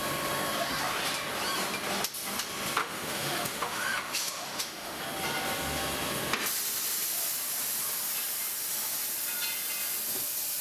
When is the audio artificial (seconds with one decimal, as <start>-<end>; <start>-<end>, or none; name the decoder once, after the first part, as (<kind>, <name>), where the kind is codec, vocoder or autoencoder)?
2.8-5.0 (autoencoder, DAC-VAE)